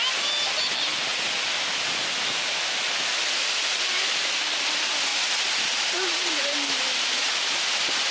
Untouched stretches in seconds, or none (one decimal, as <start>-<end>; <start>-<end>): 0.0-5.1; 7.3-8.1